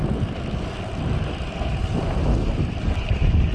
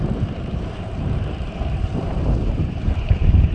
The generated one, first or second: second